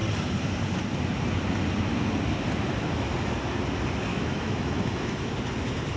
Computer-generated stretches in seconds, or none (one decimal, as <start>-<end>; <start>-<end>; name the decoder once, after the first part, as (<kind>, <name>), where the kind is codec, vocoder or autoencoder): 4.1-5.3 (autoencoder, DAC-VAE)